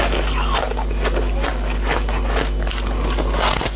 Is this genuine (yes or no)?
yes